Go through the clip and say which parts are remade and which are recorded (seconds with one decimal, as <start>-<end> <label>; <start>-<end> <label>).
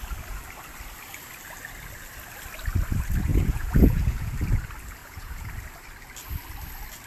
0.0-3.3 recorded; 3.3-4.3 remade; 4.3-5.0 recorded; 5.0-5.5 remade; 5.5-7.1 recorded